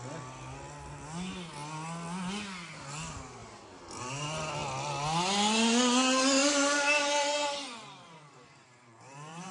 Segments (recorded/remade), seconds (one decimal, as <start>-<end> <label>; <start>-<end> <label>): 0.0-6.4 recorded; 6.4-9.5 remade